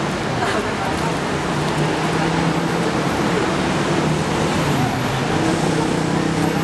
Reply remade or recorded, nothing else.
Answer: recorded